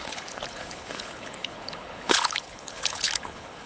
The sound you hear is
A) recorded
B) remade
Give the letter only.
B